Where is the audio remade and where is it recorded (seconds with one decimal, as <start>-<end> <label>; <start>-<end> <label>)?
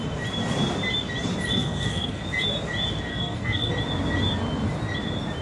0.0-1.5 recorded; 1.5-2.2 remade; 2.2-3.1 recorded; 3.1-3.7 remade; 3.7-5.4 recorded